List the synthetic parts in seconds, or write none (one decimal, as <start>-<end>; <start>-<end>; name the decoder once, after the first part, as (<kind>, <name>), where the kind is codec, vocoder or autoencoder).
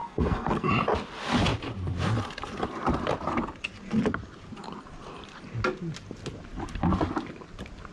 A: 0.0-0.7 (codec, SNAC)